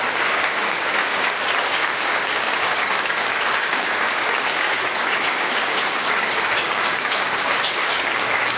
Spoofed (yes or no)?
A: yes